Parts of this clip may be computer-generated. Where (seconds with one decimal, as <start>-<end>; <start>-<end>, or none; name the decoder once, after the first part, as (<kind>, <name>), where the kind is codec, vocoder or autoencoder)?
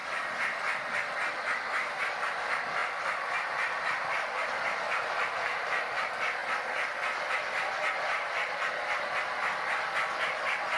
2.8-6.0 (vocoder, BigVGAN v2)